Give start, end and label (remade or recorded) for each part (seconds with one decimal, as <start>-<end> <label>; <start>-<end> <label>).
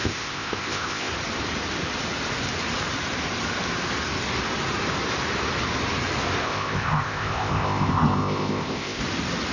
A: 0.0-1.1 remade; 1.1-6.4 recorded; 6.4-9.0 remade; 9.0-9.5 recorded